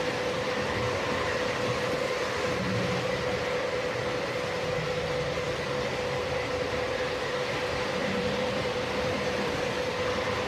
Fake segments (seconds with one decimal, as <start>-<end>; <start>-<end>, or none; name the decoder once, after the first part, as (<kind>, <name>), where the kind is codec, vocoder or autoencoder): 8.0-9.6 (vocoder, BigVGAN v2)